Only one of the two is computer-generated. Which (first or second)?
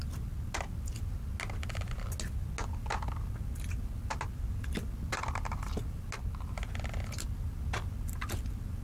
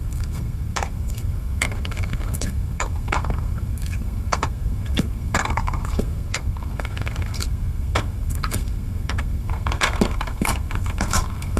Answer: second